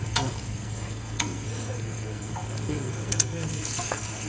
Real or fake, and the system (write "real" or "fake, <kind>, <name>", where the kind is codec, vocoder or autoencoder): fake, codec, SNAC